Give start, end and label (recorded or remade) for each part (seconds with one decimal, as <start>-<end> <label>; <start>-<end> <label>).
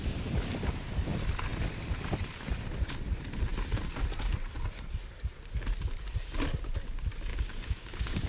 0.0-7.3 recorded; 7.3-8.3 remade